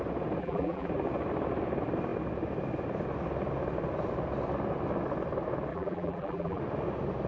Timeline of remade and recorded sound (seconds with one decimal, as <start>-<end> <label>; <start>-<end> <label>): 0.0-0.4 recorded; 0.4-0.9 remade; 0.9-5.7 recorded; 5.7-6.6 remade; 6.6-7.3 recorded